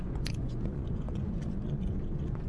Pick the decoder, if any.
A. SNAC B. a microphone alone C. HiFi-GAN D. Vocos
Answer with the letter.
D